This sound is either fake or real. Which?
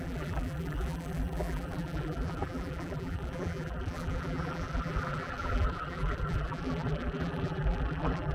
fake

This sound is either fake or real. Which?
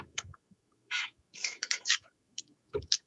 fake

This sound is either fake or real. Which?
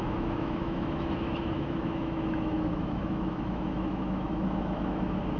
fake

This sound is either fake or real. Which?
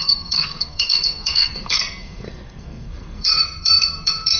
fake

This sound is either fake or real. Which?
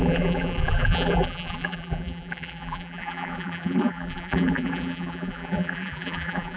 fake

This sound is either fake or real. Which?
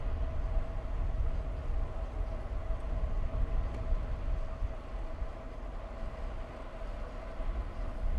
real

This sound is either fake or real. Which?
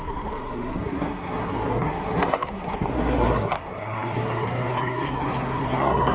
fake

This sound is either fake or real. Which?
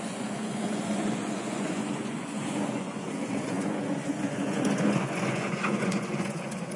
fake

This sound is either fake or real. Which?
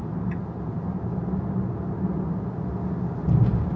real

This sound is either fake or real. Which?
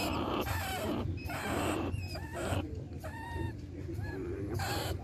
fake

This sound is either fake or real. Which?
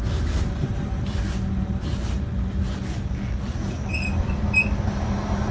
real